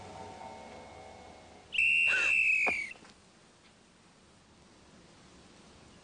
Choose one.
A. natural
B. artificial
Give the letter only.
A